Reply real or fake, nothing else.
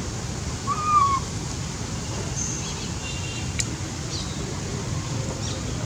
fake